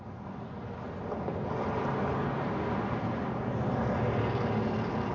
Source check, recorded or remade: recorded